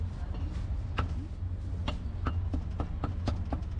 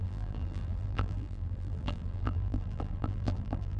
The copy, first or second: second